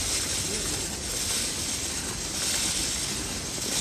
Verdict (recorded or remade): recorded